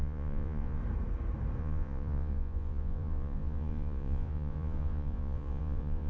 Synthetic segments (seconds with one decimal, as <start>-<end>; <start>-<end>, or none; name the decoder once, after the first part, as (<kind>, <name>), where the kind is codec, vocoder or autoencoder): 0.0-0.8 (vocoder, Vocos); 1.6-6.1

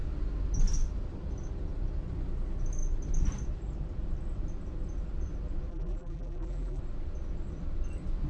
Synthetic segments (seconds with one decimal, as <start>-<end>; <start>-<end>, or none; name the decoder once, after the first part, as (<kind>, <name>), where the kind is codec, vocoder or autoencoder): 5.7-6.8 (vocoder, BigVGAN v2)

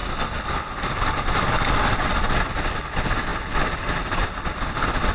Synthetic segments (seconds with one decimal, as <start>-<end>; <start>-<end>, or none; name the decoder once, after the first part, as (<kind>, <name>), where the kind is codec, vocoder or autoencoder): none